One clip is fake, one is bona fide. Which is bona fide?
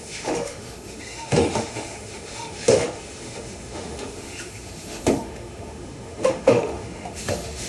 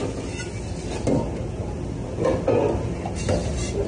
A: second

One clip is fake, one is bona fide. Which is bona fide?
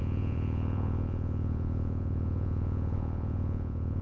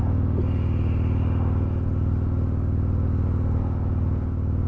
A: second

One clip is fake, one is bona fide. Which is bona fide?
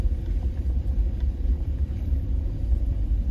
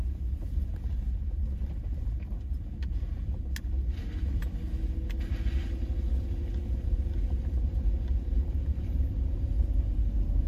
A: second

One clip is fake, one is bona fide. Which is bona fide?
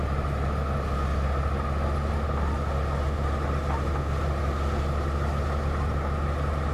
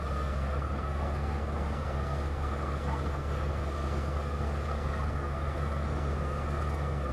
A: first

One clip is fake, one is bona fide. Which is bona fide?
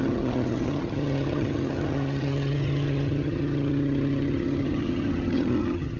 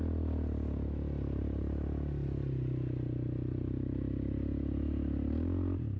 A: second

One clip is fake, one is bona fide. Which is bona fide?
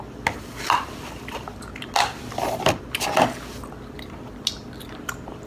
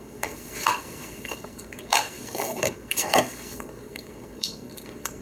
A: first